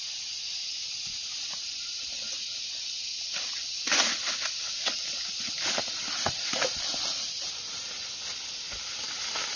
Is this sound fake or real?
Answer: real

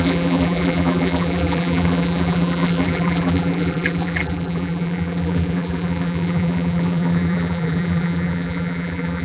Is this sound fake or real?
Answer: fake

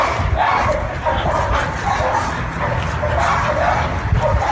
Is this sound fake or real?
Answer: real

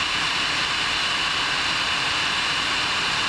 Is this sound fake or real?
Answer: real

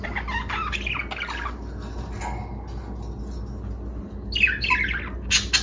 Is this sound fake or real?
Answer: real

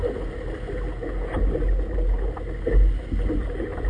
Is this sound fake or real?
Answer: real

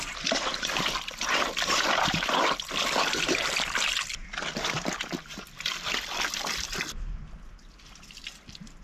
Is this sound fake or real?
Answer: fake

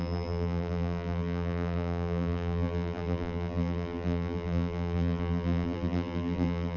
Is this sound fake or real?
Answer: fake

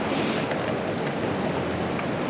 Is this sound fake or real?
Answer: real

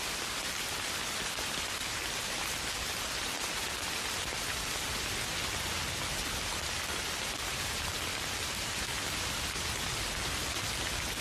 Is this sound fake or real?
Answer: real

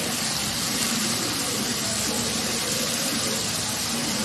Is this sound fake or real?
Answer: fake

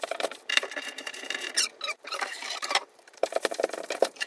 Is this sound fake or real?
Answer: fake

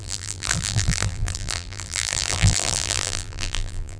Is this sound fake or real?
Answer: fake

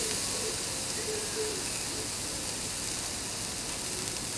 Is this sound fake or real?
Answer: real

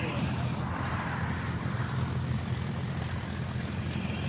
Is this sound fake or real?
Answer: fake